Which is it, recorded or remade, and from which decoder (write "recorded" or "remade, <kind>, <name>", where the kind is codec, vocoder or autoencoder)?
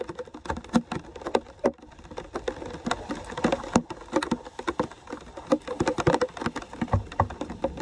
recorded